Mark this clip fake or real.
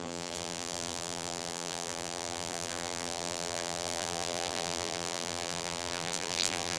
fake